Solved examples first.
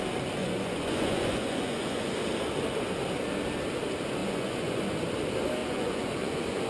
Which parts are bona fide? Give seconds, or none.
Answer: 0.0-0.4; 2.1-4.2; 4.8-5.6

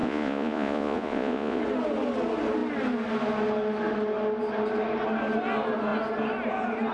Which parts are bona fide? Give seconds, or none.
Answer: 1.6-6.9

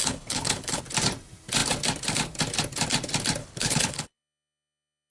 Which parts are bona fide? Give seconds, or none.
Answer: 0.8-3.4

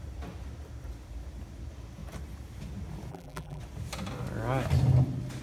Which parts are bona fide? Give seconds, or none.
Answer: 0.0-3.1; 3.6-5.4

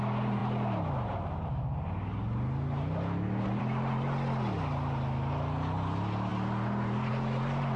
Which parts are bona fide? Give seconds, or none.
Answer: 0.0-7.8

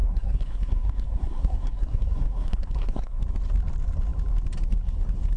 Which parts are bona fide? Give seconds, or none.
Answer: 3.2-5.4